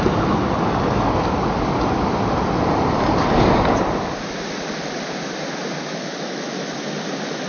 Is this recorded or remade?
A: recorded